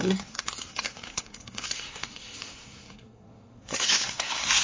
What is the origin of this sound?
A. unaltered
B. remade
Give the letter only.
B